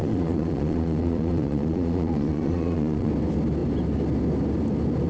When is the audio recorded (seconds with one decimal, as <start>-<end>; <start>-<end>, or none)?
3.1-5.1